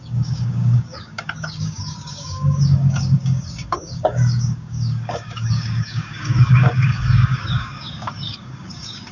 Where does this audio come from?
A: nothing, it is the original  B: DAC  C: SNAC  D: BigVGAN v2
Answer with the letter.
B